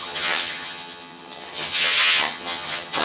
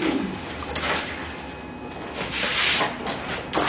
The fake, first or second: first